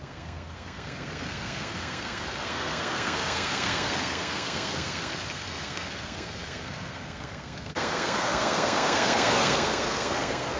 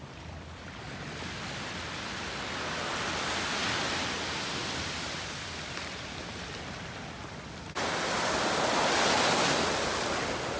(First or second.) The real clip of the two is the second